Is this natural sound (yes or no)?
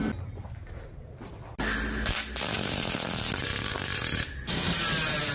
yes